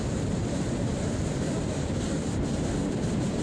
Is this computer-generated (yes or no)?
yes